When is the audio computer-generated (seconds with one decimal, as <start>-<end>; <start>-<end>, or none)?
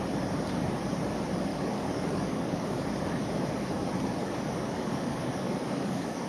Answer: 1.5-3.0; 4.2-6.3